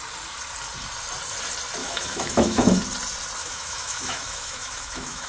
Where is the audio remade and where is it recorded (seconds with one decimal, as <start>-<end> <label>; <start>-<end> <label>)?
0.0-1.8 recorded; 1.8-2.8 remade; 2.8-3.4 recorded; 3.4-5.3 remade